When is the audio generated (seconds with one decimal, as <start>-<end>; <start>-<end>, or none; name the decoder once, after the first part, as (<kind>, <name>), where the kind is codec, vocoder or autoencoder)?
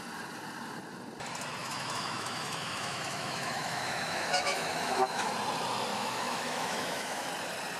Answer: 1.6-5.3 (autoencoder, DAC-VAE); 5.9-7.3